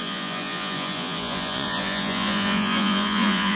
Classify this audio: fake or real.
fake